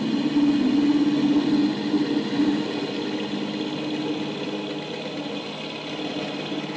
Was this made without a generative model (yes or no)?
yes